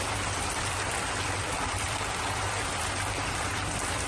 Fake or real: fake